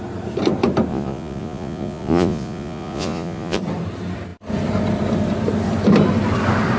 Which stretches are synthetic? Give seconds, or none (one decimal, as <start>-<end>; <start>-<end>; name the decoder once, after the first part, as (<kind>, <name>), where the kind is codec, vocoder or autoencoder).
0.9-3.6 (vocoder, Vocos)